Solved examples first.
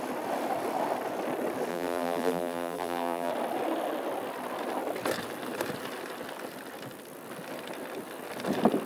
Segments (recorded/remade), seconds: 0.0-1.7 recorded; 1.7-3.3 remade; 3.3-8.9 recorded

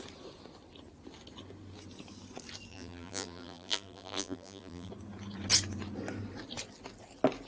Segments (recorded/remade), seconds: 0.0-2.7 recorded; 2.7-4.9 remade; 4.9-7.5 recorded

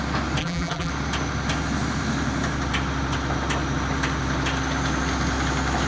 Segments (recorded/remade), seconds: 0.0-0.4 recorded; 0.4-0.9 remade; 0.9-5.9 recorded